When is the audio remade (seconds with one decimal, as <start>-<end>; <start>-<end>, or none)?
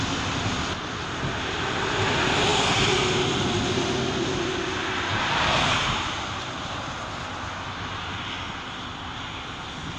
5.1-6.5